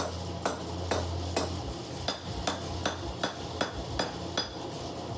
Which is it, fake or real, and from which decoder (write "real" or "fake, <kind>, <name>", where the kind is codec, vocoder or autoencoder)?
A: real